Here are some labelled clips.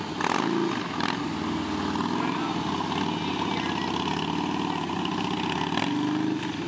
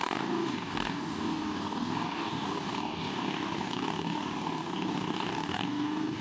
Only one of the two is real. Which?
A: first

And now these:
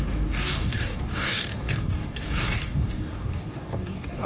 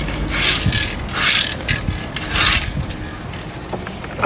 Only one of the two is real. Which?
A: second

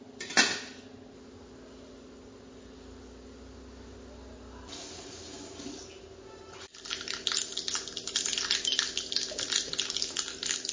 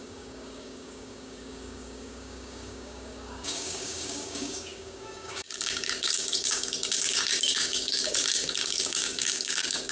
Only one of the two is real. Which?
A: first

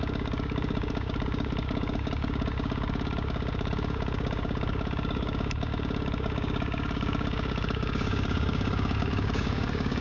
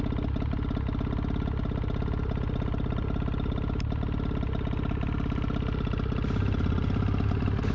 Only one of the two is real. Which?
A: second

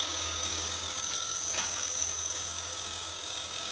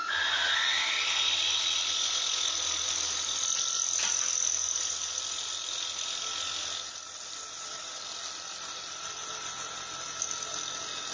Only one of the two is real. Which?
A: second